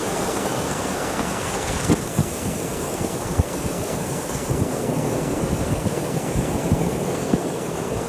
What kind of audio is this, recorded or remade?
remade